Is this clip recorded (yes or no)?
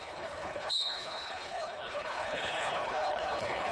no